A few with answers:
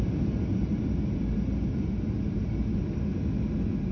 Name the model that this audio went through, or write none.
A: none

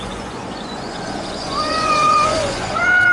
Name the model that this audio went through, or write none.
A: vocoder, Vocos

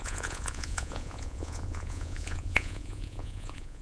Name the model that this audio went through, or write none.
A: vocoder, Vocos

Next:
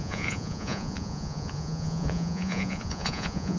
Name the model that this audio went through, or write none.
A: vocoder, Vocos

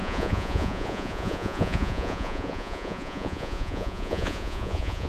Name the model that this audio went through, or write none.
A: vocoder, Vocos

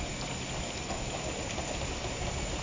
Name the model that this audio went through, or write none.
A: none